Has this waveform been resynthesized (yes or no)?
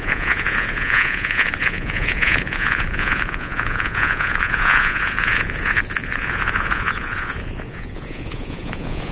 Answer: yes